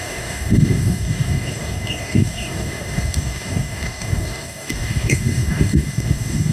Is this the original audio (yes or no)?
no